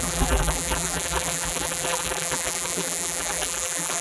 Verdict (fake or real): fake